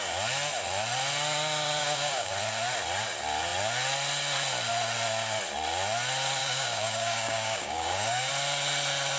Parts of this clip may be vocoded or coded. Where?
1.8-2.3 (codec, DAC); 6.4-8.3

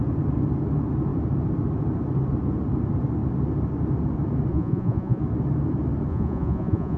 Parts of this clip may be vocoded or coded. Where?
4.5-5.2 (vocoder, Vocos); 6.1-7.0

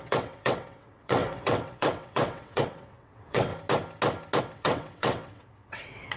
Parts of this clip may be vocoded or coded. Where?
0.0-3.5 (vocoder, WaveNeXt); 4.4-6.2

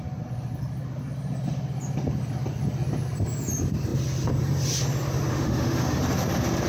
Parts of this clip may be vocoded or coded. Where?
5.3-6.0 (autoencoder, DAC-VAE)

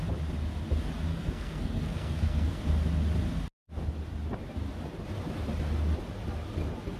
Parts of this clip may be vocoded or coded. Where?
1.1-2.6 (codec, SNAC)

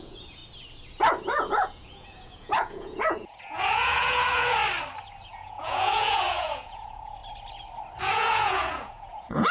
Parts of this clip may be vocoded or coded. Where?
0.0-0.4 (vocoder, Vocos); 1.5-4.6; 5.3-7.2; 8.0-9.5

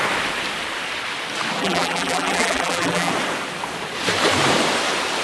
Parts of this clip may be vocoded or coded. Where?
1.6-3.1 (vocoder, BigVGAN v2)